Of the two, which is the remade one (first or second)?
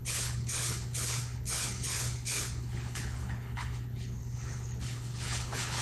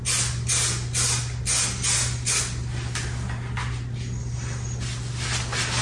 first